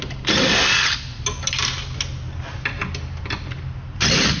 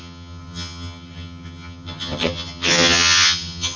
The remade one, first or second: second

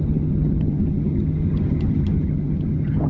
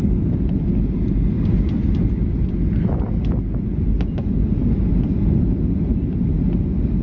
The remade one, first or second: first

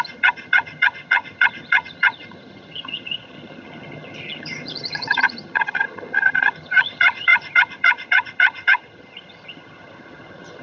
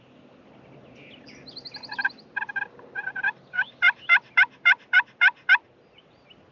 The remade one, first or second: first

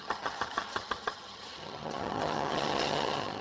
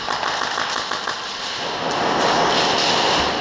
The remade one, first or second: first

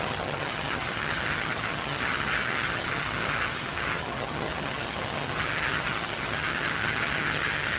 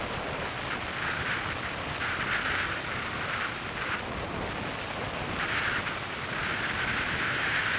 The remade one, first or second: first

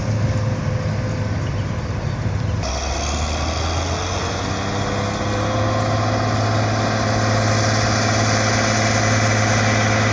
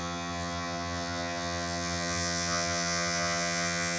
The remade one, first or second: second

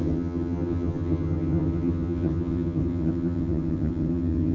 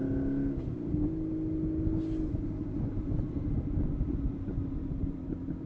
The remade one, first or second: first